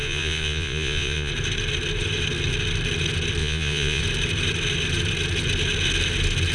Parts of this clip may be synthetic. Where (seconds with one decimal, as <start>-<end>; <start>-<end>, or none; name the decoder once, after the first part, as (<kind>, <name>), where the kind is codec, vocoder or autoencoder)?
0.0-1.3 (vocoder, Vocos); 3.4-4.0